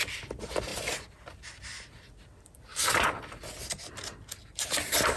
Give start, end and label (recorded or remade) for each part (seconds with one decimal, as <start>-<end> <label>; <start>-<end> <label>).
0.0-5.2 recorded